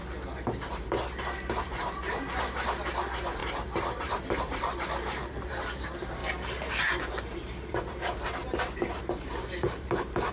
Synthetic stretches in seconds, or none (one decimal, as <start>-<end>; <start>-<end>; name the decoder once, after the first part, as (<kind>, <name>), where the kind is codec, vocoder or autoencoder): 1.6-6.2 (vocoder, BigVGAN v2); 6.7-10.3